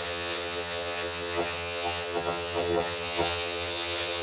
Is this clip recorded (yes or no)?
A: no